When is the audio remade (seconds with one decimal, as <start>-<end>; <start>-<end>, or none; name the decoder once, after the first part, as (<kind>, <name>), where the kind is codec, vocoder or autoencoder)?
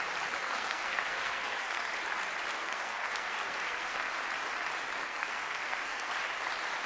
0.4-1.9 (codec, SNAC); 2.5-4.1; 5.0-6.1